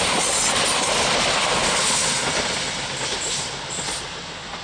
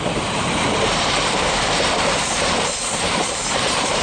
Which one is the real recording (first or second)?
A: first